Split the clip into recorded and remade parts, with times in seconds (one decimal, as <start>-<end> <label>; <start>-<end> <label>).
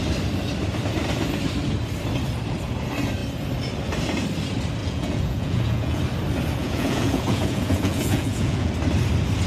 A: 0.0-4.8 recorded; 4.8-6.0 remade; 6.0-6.6 recorded; 6.6-8.7 remade; 8.7-9.5 recorded